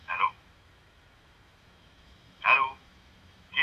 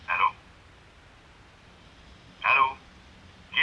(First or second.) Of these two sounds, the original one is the second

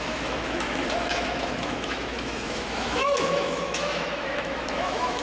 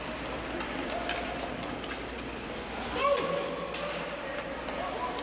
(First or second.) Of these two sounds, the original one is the second